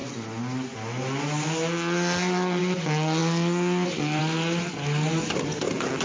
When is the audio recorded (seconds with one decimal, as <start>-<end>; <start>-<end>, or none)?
0.0-6.0